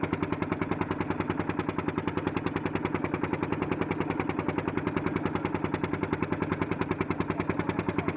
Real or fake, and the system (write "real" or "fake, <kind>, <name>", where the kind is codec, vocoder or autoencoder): real